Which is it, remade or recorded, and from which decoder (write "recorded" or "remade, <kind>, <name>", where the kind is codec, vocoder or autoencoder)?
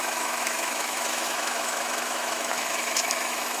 remade, autoencoder, DAC-VAE